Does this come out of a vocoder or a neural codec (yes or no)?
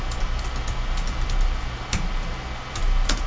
no